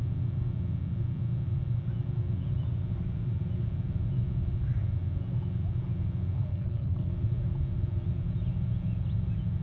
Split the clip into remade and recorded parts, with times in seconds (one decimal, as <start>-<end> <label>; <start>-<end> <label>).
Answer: 0.0-6.5 recorded; 6.5-7.1 remade; 7.1-9.6 recorded